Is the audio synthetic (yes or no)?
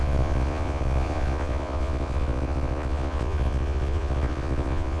yes